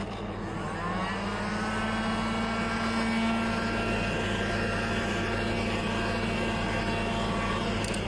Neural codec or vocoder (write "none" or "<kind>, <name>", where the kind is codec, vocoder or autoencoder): none